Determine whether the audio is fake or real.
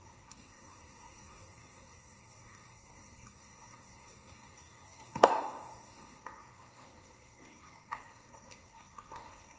fake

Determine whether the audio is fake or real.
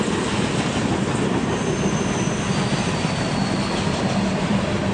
real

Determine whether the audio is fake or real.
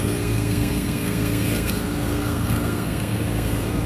fake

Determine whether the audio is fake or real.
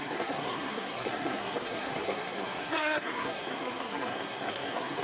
fake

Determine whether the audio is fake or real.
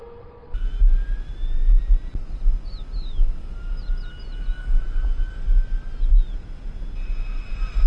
real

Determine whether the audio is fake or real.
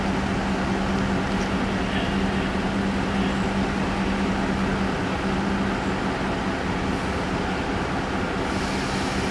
real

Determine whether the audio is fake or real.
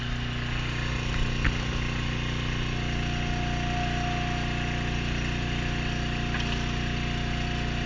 real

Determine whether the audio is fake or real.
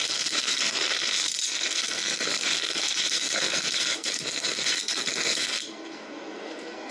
fake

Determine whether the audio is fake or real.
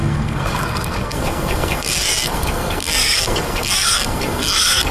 fake